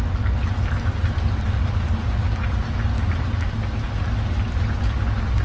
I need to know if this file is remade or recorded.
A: recorded